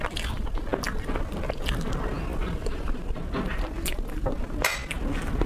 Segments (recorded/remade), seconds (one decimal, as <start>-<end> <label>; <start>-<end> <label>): 0.0-5.5 recorded